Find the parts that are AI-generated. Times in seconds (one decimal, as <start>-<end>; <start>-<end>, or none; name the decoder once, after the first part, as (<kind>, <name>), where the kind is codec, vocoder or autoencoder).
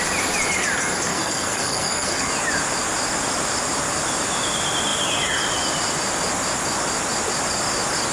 1.1-2.3 (codec, SNAC)